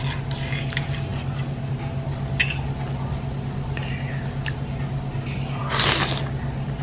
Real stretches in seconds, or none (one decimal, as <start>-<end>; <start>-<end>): 0.0-5.6; 6.2-6.8